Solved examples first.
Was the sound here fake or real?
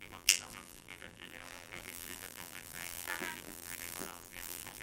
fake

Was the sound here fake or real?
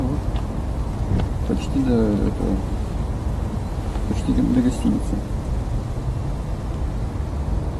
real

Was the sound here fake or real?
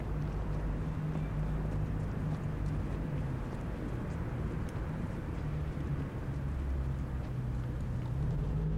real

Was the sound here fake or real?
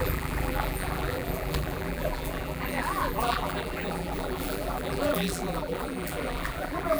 fake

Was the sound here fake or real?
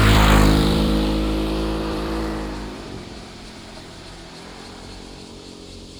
fake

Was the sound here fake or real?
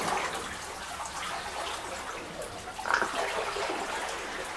real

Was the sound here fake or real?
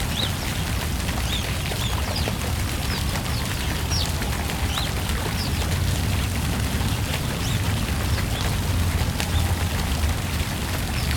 real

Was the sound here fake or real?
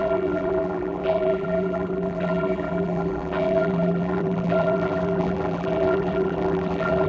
fake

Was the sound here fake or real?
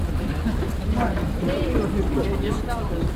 real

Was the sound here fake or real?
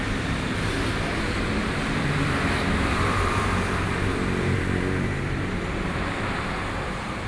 fake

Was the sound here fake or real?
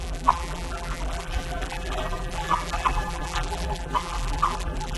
fake